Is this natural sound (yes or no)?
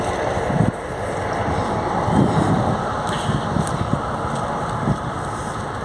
yes